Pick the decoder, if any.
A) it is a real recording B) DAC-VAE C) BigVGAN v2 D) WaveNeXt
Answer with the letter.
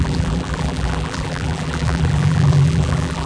C